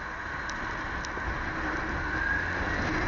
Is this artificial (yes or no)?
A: no